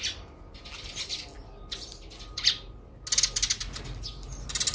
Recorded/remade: recorded